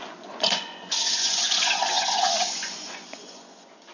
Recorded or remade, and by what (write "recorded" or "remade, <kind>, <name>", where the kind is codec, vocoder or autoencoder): remade, vocoder, Vocos